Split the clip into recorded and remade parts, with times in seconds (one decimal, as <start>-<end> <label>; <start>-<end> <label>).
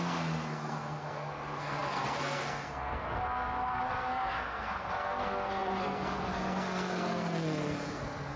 0.0-8.4 remade